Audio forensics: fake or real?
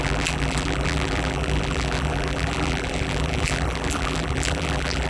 fake